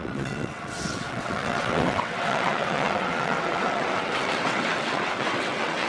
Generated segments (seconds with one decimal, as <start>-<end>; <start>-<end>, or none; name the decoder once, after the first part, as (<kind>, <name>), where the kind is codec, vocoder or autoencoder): 0.0-5.9 (vocoder, WaveNeXt)